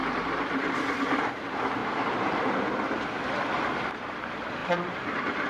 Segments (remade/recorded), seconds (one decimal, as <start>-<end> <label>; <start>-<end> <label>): 0.0-1.8 remade; 1.8-3.9 recorded; 3.9-5.5 remade